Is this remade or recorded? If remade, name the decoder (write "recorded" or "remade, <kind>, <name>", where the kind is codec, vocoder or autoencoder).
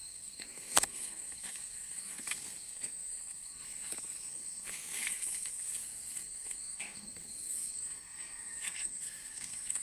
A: remade, codec, SNAC